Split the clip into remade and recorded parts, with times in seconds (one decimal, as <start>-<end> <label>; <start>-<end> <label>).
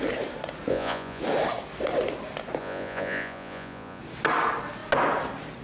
0.0-0.7 recorded; 0.7-1.2 remade; 1.2-2.6 recorded; 2.6-4.0 remade; 4.0-5.6 recorded